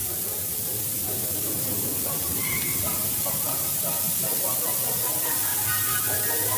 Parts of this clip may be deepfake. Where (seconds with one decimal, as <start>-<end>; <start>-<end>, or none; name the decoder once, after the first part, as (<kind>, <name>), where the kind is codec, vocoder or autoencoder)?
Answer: 0.0-4.0 (vocoder, BigVGAN v2); 5.5-6.6